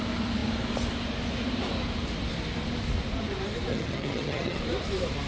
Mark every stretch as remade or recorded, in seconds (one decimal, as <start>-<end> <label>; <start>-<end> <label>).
0.0-3.7 recorded; 3.7-4.6 remade; 4.6-5.3 recorded